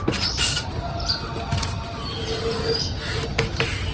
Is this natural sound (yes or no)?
yes